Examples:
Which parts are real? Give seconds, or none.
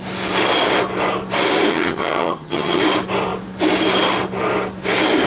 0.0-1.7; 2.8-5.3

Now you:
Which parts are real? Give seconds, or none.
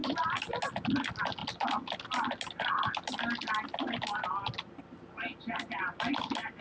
0.0-6.6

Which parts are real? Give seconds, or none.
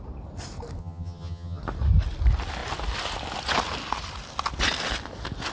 0.0-0.8; 1.6-5.5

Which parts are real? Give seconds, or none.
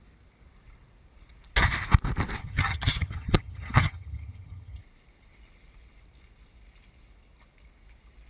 0.0-2.4; 4.8-8.3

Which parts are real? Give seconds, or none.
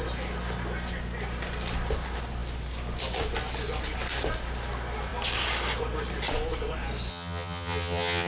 0.0-7.1